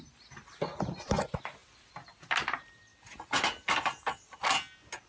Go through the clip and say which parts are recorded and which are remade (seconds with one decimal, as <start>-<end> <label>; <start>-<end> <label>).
0.0-5.1 recorded